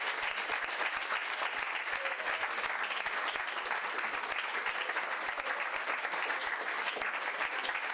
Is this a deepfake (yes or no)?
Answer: no